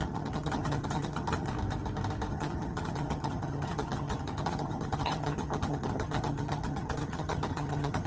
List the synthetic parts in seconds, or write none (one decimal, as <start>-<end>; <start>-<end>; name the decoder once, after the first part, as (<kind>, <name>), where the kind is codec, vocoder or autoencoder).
0.0-1.5 (vocoder, HiFi-GAN); 2.3-8.1